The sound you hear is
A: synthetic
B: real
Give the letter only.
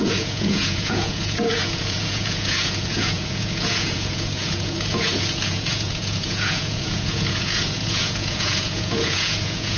A